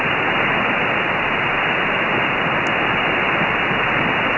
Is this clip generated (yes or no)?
no